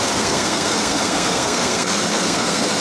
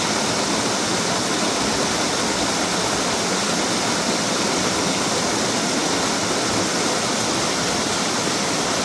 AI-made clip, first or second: first